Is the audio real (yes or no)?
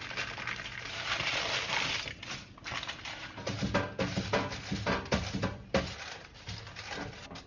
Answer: yes